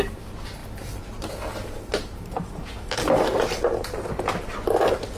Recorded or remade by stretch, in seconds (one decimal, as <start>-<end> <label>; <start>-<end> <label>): 0.0-5.2 recorded

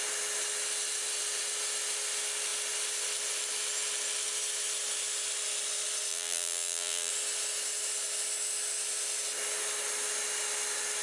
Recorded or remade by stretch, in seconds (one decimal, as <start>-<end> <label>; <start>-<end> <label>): 0.0-6.1 recorded; 6.1-7.1 remade; 7.1-11.0 recorded

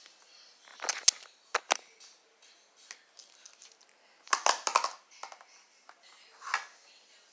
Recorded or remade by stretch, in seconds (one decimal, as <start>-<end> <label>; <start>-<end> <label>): 0.0-7.3 recorded